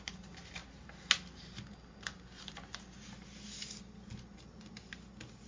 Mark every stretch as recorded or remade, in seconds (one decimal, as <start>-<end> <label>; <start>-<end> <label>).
0.0-5.5 recorded